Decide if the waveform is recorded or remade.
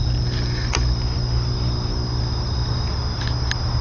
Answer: recorded